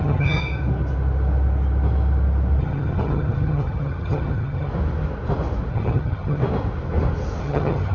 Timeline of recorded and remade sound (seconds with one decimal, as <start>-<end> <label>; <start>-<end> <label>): 0.0-0.4 remade; 0.4-2.6 recorded; 2.6-4.7 remade; 4.7-5.7 recorded; 5.7-6.4 remade; 6.4-7.4 recorded; 7.4-7.9 remade

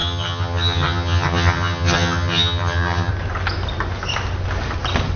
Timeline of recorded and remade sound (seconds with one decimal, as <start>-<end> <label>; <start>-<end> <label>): 0.0-3.1 remade; 3.1-5.2 recorded

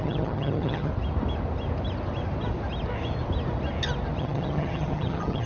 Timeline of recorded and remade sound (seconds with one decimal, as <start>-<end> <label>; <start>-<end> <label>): 0.0-0.9 remade; 0.9-4.2 recorded; 4.2-5.5 remade

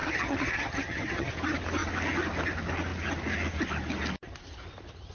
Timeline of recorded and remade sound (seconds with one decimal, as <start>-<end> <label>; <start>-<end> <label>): 0.0-1.3 remade; 1.3-5.1 recorded

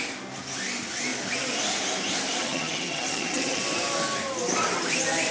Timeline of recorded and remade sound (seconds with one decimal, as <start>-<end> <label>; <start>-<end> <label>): 0.0-2.4 recorded; 2.4-3.6 remade; 3.6-5.3 recorded